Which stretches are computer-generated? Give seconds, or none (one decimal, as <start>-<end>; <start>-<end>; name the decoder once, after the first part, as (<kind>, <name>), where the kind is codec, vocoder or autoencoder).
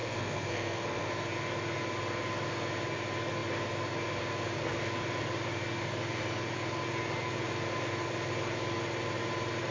0.0-1.1 (codec, SNAC)